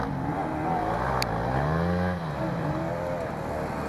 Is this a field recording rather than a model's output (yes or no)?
yes